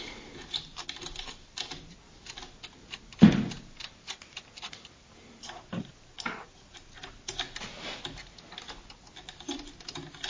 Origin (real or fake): real